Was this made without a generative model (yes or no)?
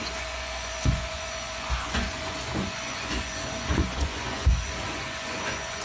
no